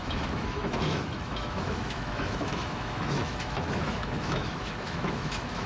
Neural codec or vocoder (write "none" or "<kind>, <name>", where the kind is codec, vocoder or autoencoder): autoencoder, DAC-VAE